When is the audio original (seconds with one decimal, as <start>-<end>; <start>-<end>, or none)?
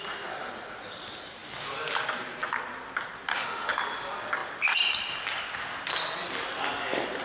0.0-3.3; 3.8-7.2